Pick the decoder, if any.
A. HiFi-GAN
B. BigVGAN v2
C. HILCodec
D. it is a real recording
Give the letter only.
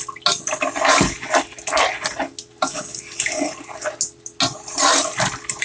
D